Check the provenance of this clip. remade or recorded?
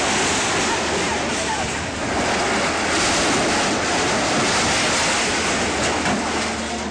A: recorded